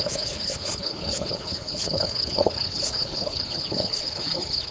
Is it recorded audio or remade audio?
remade